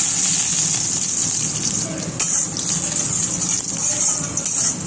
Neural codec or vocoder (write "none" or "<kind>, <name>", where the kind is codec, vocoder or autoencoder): none